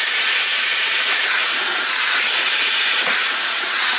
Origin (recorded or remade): remade